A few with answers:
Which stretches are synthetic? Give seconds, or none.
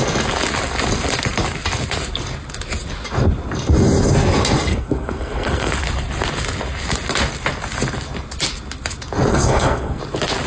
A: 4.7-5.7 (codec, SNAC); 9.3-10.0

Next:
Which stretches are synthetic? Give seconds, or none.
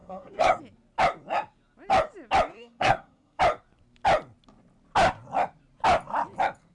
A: 0.0-0.6 (codec, SNAC); 2.5-3.4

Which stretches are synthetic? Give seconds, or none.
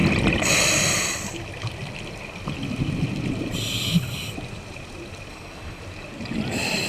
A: 5.3-5.8 (codec, SNAC)